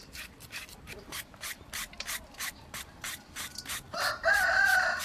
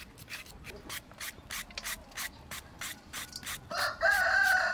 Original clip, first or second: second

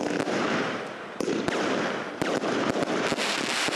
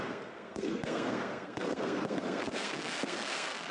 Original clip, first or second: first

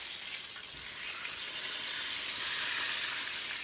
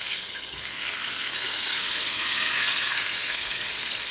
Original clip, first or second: first